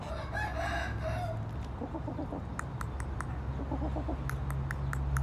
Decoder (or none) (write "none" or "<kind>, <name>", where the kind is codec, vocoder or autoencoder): none